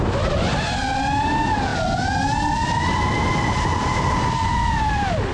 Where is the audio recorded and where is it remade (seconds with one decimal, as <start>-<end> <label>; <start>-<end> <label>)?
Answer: 0.0-5.3 recorded